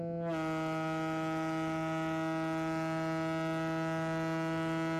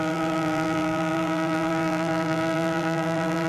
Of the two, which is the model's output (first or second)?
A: second